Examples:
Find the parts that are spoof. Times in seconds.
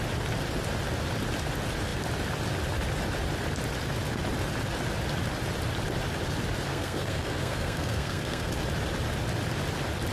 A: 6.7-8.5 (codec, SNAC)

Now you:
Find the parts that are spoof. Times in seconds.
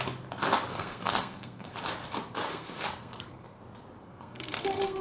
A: 0.7-1.7 (codec, SNAC); 2.5-3.6; 4.0-5.0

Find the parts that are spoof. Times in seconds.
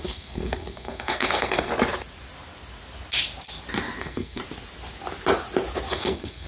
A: 0.0-1.7 (codec, SNAC); 4.0-4.4; 5.9-6.5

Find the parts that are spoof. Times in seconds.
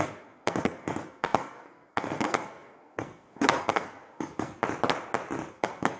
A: 0.0-4.6 (codec, SNAC); 5.5-6.0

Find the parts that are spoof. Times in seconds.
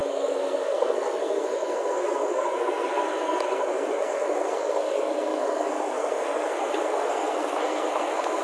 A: 0.0-8.4 (codec, SNAC)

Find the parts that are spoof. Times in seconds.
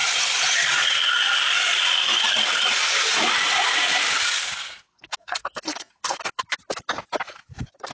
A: 4.9-6.5 (codec, SNAC)